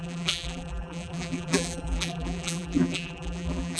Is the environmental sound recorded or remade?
remade